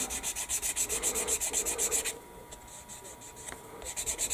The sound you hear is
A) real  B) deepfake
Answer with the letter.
A